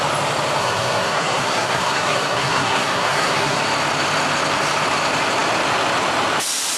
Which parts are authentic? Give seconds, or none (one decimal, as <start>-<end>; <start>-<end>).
0.0-0.6; 3.6-6.8